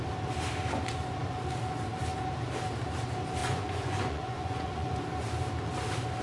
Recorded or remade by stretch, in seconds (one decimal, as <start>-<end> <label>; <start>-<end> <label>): 0.0-3.4 recorded; 3.4-5.0 remade; 5.0-6.2 recorded